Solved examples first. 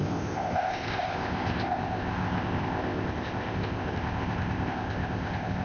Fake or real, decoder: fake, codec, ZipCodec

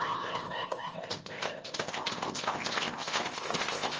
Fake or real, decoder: fake, codec, ZipCodec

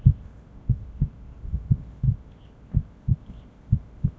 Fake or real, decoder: fake, codec, ZipCodec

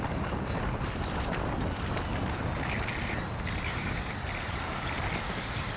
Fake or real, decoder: real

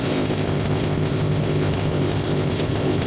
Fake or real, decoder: fake, codec, ZipCodec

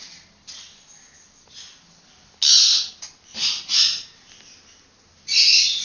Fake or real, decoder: real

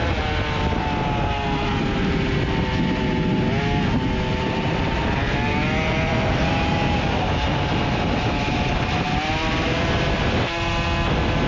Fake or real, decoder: real